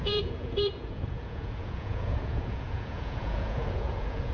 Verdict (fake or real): fake